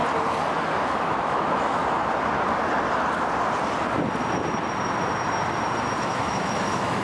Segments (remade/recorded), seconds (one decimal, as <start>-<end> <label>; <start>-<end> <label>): 0.0-1.0 recorded; 1.0-1.8 remade; 1.8-6.0 recorded; 6.0-7.0 remade